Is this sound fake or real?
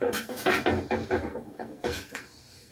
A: fake